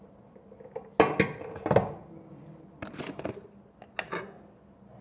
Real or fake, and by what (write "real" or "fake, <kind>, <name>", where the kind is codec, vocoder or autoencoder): real